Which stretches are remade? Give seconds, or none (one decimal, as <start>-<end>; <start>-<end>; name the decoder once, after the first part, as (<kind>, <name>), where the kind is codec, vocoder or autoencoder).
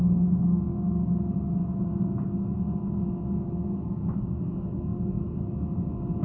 0.0-0.7 (codec, DAC); 3.9-4.9